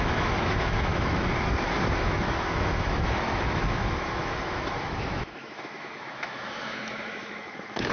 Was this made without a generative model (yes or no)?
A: no